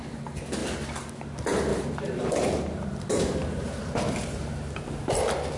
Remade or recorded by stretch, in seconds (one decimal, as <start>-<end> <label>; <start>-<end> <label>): 0.0-0.6 recorded; 0.6-1.1 remade; 1.1-1.7 recorded; 1.7-5.1 remade; 5.1-5.6 recorded